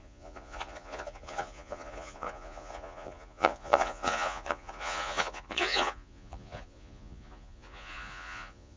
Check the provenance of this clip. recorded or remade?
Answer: remade